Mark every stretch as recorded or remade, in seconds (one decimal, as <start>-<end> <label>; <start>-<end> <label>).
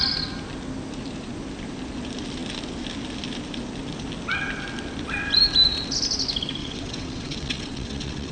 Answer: 0.0-6.6 recorded; 6.6-8.3 remade